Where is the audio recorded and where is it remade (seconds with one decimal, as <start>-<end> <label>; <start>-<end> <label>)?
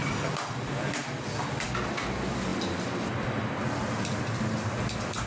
0.0-5.3 recorded